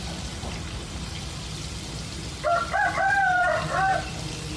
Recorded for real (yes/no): yes